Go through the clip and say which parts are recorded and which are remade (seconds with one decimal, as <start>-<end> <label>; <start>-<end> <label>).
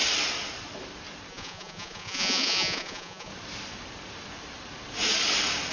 0.0-1.3 recorded; 1.3-3.3 remade; 3.3-5.7 recorded